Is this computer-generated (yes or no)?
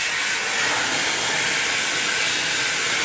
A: no